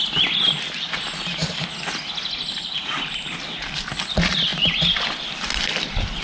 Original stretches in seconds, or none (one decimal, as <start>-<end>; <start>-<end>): 0.0-6.2